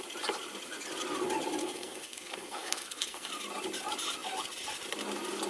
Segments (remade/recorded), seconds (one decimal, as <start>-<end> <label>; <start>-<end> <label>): 0.0-1.6 recorded; 1.6-3.3 remade; 3.3-5.5 recorded